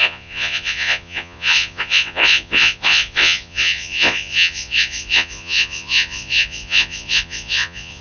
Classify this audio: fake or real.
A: fake